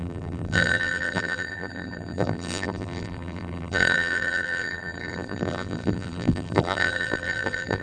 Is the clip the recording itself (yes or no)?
no